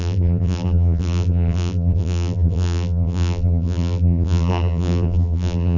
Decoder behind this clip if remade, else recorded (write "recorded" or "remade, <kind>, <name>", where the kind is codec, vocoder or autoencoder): remade, vocoder, BigVGAN v2